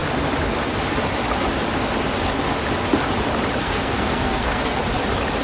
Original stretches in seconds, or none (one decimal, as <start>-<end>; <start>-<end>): 0.0-3.6; 4.8-5.4

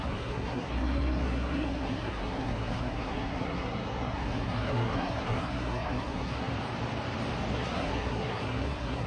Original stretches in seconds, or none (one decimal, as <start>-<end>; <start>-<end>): 6.5-7.5

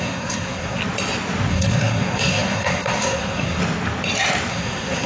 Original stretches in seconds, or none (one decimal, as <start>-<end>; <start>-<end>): 0.8-1.5; 3.6-4.5

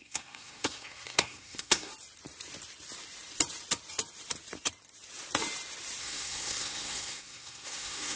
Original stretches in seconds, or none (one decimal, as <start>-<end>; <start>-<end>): 1.9-6.0

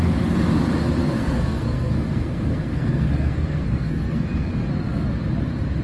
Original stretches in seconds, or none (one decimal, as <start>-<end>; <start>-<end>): 0.0-1.0; 4.5-5.8

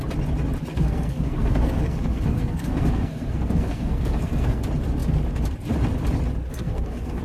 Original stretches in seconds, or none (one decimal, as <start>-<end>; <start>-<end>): 0.0-0.7; 4.6-6.5

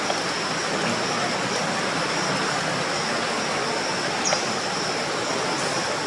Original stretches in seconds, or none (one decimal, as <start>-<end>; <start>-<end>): 0.0-6.1

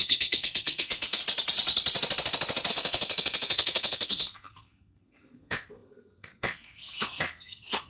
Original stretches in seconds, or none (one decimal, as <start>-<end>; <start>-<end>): 1.2-2.7